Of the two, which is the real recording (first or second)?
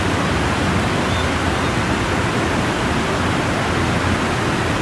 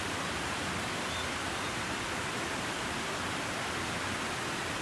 first